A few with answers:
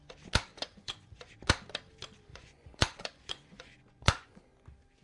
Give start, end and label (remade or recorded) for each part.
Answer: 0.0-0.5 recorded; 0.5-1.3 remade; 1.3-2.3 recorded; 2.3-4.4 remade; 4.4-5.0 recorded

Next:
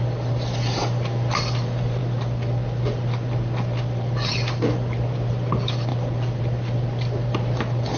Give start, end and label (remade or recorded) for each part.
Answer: 0.0-8.0 recorded

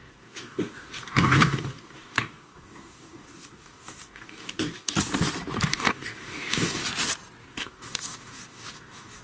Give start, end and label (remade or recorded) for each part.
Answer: 0.0-4.9 remade; 4.9-5.7 recorded; 5.7-6.8 remade; 6.8-7.4 recorded; 7.4-9.2 remade

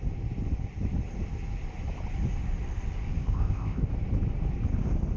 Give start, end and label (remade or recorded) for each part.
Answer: 0.0-3.2 recorded; 3.2-3.9 remade; 3.9-5.2 recorded

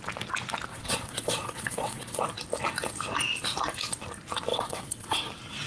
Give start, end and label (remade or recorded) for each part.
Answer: 0.0-0.7 recorded; 0.7-2.2 remade; 2.2-4.5 recorded; 4.5-5.3 remade; 5.3-5.7 recorded